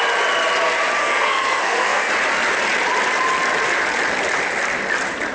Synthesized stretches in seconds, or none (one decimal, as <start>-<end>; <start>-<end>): 1.0-2.1